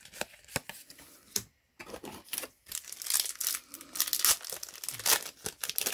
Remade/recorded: recorded